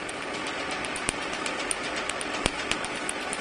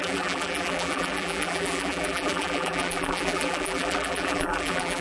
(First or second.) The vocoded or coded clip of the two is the second